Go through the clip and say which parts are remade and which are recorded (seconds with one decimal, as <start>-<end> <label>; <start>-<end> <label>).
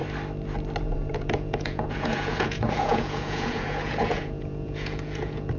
0.0-0.8 recorded; 0.8-5.6 remade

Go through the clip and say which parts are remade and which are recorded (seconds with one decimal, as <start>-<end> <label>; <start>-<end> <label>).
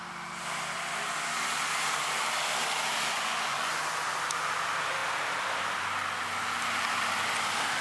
0.0-3.1 recorded; 3.1-3.8 remade; 3.8-7.8 recorded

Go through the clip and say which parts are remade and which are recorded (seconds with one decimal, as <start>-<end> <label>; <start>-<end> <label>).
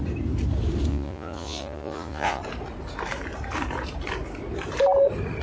0.0-0.9 recorded; 0.9-2.4 remade; 2.4-5.4 recorded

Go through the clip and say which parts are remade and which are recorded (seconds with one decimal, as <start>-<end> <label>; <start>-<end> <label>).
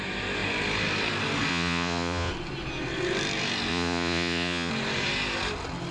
0.0-1.5 recorded; 1.5-2.3 remade; 2.3-3.7 recorded; 3.7-4.7 remade; 4.7-5.9 recorded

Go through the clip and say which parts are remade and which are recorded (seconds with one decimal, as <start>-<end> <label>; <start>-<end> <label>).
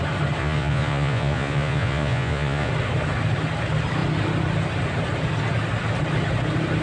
0.0-0.4 recorded; 0.4-2.7 remade; 2.7-6.8 recorded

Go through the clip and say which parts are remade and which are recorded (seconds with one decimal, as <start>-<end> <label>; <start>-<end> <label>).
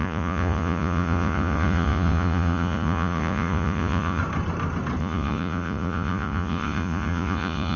0.0-4.2 remade; 4.2-5.0 recorded; 5.0-7.8 remade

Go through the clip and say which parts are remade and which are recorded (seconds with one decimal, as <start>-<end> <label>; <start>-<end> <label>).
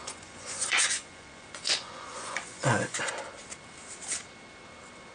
0.0-3.1 remade; 3.1-5.1 recorded